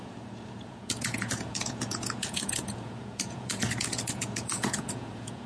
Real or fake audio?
fake